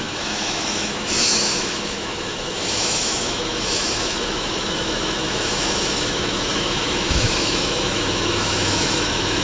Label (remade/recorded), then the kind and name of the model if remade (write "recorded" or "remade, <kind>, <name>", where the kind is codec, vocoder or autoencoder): remade, autoencoder, DAC-VAE